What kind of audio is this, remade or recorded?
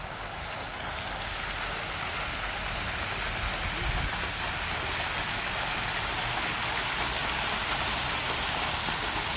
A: recorded